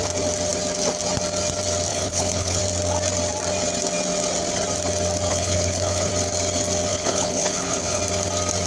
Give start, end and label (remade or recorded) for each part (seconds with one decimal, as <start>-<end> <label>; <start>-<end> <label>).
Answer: 0.0-1.9 recorded; 1.9-2.6 remade; 2.6-5.3 recorded; 5.3-6.1 remade; 6.1-6.9 recorded; 6.9-8.0 remade; 8.0-8.7 recorded